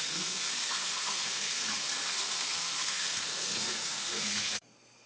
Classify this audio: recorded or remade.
remade